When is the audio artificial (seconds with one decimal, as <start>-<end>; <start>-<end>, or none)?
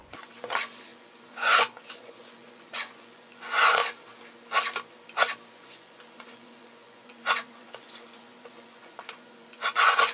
0.0-3.8; 5.5-10.1